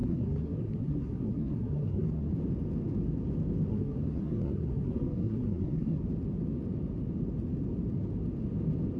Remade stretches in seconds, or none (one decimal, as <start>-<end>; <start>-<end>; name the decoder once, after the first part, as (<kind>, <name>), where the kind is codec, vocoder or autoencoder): 0.0-2.3 (codec, SNAC); 3.7-6.0